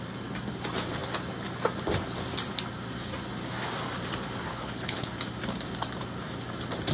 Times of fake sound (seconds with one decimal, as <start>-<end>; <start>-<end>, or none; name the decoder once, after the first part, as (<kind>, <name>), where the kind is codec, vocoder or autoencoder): 4.5-5.1 (codec, HILCodec)